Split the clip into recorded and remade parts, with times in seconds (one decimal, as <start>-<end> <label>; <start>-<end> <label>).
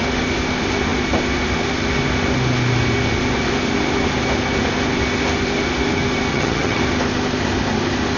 0.0-6.3 recorded; 6.3-6.8 remade; 6.8-8.2 recorded